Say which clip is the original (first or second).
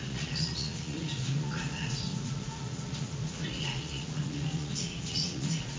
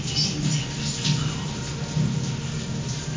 second